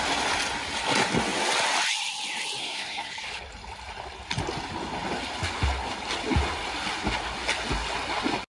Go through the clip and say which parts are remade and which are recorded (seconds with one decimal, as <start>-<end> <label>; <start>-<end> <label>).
0.0-2.6 recorded; 2.6-3.1 remade; 3.1-8.6 recorded